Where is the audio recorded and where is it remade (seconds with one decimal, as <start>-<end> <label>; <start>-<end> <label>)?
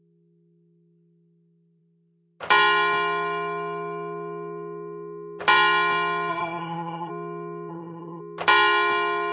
0.0-6.3 recorded; 6.3-7.1 remade; 7.1-7.7 recorded; 7.7-8.2 remade; 8.2-9.3 recorded